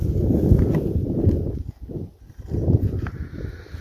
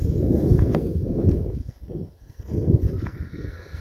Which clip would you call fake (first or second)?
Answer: second